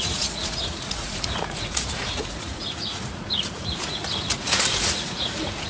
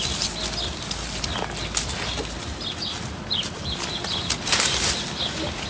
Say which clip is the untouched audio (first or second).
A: second